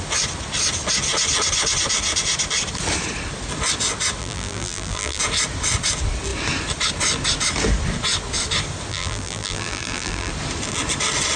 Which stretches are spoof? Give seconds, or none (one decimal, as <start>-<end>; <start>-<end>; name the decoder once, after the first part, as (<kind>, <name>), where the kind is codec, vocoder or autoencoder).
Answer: 4.2-5.2 (vocoder, BigVGAN v2); 8.9-10.3